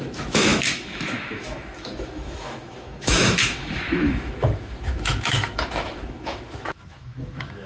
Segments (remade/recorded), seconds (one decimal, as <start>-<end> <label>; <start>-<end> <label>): 0.0-7.7 remade